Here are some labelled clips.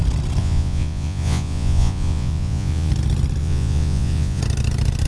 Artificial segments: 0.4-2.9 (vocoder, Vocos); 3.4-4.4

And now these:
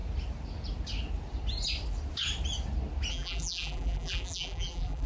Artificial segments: 3.1-5.1 (vocoder, BigVGAN v2)

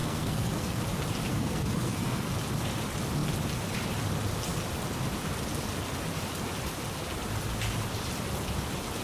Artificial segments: 0.0-0.8 (codec, SNAC); 1.3-2.3

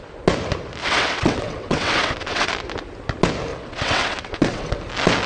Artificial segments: 0.8-2.5 (vocoder, WaveNeXt); 3.5-4.8

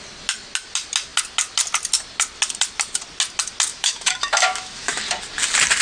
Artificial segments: 3.7-5.0 (autoencoder, DAC-VAE)

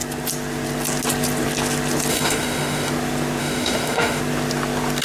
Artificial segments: 2.1-2.9 (autoencoder, DAC-VAE); 3.4-4.2

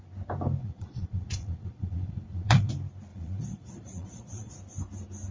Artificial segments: 0.6-2.7 (vocoder, Vocos); 3.1-4.5

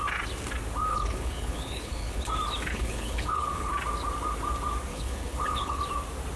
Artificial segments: 0.9-2.3 (codec, HILCodec); 2.7-3.7; 4.9-5.8